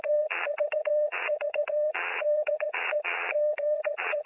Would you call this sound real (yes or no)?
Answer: no